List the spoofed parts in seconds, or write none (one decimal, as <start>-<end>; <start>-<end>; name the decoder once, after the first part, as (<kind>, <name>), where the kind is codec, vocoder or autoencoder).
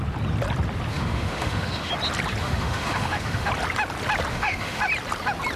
0.9-1.9 (autoencoder, DAC-VAE); 2.4-3.5; 4.3-4.8